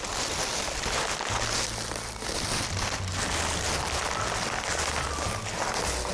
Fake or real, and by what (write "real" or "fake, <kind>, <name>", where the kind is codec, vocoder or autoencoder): real